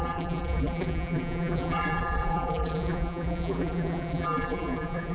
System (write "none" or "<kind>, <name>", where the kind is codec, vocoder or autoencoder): vocoder, BigVGAN v2